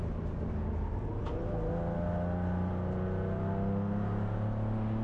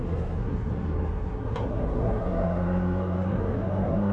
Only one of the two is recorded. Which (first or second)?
first